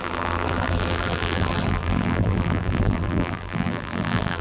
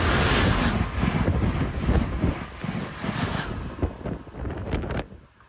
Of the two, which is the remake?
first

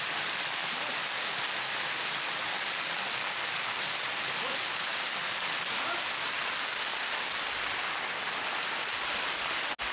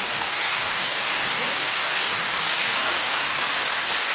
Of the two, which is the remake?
second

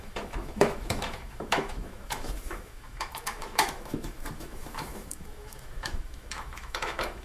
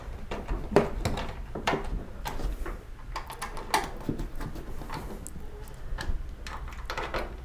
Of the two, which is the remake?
first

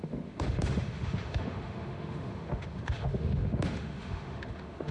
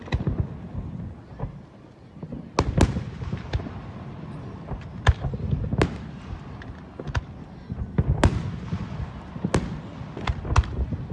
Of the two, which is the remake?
first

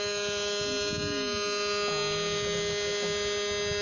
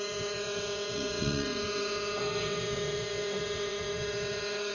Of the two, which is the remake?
second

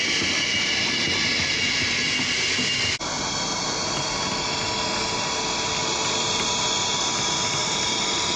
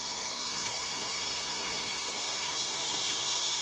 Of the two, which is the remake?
second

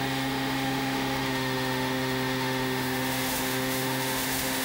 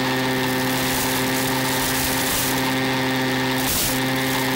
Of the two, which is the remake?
first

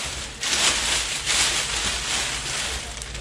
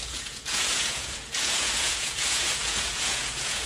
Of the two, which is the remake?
second